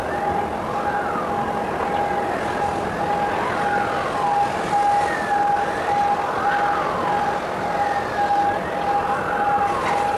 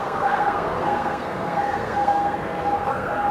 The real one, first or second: first